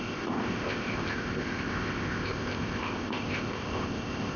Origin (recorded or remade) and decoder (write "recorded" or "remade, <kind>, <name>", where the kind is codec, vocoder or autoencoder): remade, codec, ZipCodec